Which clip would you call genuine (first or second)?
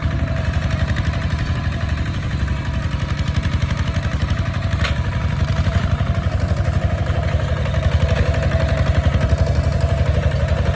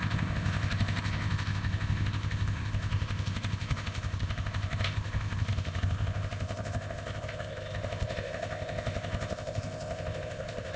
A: first